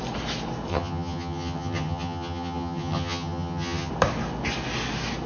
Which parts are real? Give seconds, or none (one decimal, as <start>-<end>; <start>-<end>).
0.0-0.7; 3.9-5.3